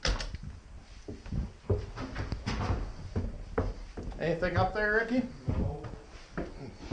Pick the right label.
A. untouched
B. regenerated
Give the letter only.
A